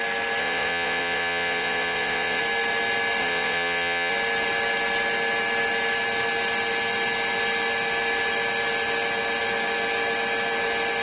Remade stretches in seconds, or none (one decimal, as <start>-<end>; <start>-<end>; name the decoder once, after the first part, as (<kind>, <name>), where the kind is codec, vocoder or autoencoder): 0.4-2.4 (vocoder, Vocos); 3.2-4.1